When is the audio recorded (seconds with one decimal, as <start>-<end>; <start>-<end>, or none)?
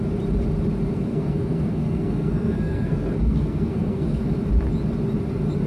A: 0.0-0.9; 4.3-5.7